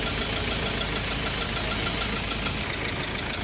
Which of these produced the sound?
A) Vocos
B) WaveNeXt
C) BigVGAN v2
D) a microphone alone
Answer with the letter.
D